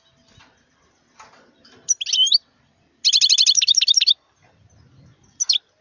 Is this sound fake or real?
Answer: real